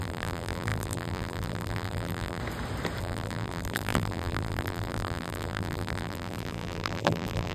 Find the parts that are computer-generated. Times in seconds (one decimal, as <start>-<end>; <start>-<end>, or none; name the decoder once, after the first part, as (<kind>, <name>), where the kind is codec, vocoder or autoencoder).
0.0-2.4 (vocoder, BigVGAN v2); 3.0-7.5